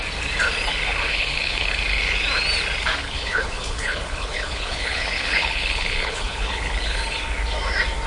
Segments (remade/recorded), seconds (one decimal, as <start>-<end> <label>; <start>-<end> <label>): 0.0-1.1 recorded; 1.1-1.7 remade; 1.7-3.0 recorded; 3.0-7.0 remade; 7.0-8.1 recorded